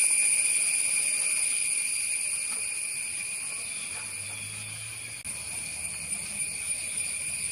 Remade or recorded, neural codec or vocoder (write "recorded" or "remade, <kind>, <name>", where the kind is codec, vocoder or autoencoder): recorded